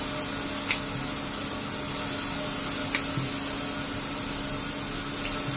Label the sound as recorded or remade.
recorded